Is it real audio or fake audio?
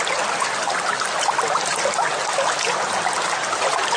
real